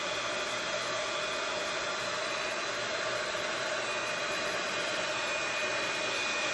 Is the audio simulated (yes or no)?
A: no